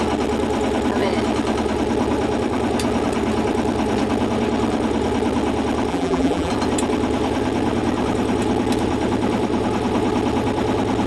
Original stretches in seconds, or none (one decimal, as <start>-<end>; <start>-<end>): 0.0-5.9; 6.5-11.1